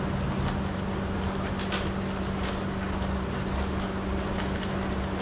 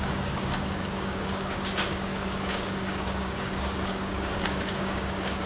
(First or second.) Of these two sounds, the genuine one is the first